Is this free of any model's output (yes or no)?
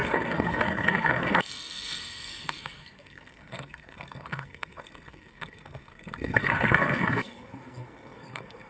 no